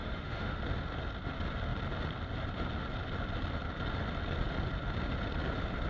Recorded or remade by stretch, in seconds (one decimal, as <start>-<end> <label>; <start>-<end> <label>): 0.0-0.6 remade; 0.6-5.9 recorded